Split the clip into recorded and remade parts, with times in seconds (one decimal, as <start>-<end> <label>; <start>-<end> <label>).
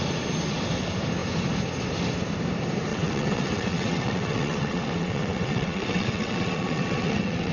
0.0-2.9 recorded; 2.9-7.5 remade